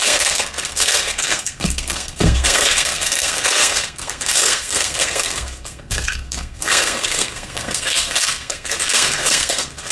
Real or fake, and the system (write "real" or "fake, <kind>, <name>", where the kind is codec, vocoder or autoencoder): fake, codec, SNAC